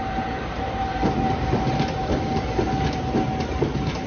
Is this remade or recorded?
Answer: remade